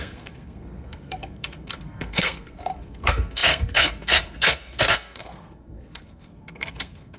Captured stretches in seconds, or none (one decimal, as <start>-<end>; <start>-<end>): none